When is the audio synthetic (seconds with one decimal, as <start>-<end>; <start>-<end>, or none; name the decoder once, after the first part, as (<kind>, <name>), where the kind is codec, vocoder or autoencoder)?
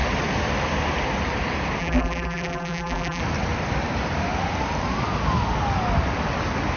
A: 1.8-3.2 (vocoder, BigVGAN v2)